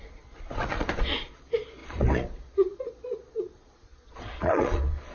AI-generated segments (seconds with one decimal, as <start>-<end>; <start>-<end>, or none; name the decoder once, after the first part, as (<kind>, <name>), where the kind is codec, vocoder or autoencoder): 0.0-5.1 (vocoder, Vocos)